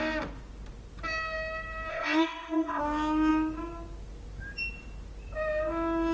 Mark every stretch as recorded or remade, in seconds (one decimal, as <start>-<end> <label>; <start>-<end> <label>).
0.0-1.9 recorded; 1.9-2.8 remade; 2.8-6.1 recorded